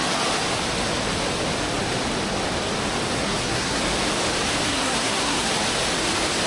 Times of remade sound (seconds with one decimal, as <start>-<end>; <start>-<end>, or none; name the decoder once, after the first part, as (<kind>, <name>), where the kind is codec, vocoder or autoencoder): 3.2-3.8 (codec, SNAC); 4.7-5.5